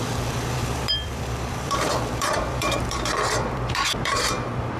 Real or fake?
fake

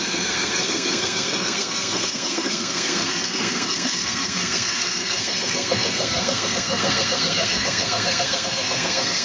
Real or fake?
fake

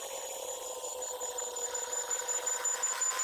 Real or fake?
fake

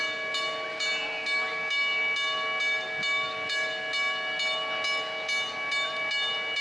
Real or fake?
real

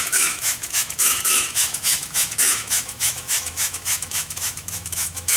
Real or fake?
fake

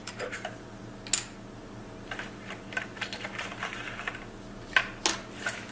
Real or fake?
real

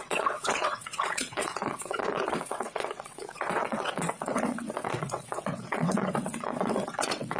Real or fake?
fake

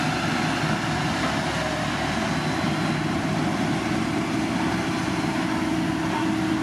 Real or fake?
real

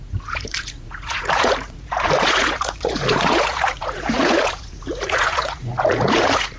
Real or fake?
fake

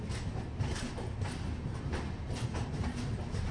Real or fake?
real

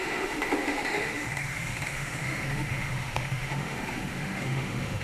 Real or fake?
fake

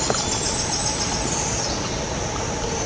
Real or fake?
real